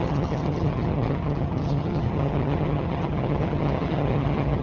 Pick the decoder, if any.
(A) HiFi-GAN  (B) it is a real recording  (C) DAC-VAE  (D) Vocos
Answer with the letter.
A